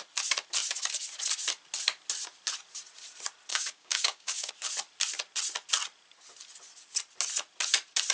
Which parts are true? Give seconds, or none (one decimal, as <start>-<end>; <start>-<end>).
0.0-3.5; 4.5-8.1